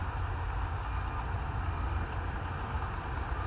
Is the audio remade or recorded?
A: recorded